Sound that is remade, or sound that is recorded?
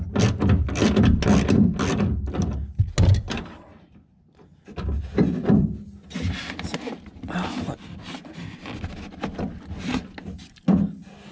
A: recorded